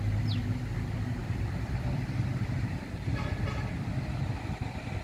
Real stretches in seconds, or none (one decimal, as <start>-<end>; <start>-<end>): 0.0-1.2; 4.2-5.0